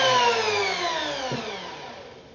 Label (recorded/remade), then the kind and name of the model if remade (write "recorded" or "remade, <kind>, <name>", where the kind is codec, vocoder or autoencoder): recorded